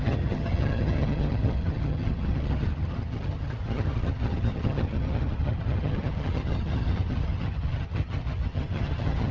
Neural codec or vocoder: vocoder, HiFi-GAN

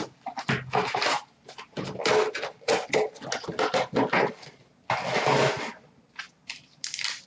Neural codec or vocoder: none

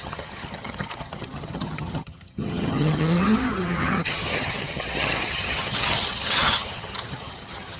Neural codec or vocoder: vocoder, HiFi-GAN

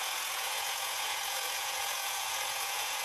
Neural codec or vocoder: vocoder, Vocos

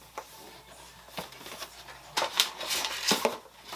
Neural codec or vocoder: vocoder, BigVGAN v2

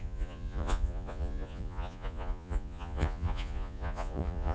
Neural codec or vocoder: vocoder, Vocos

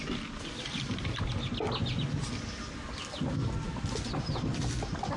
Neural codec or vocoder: none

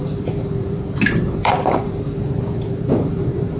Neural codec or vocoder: vocoder, BigVGAN v2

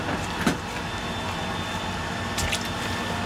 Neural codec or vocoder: none